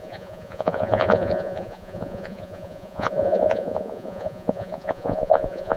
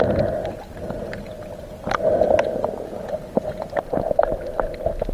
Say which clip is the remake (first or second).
first